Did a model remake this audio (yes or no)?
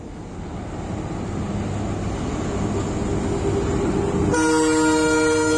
no